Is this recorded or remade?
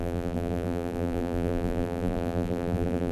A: remade